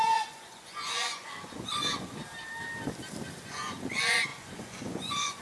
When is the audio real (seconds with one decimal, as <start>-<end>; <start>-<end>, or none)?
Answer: 2.2-3.4